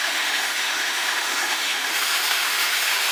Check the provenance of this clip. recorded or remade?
remade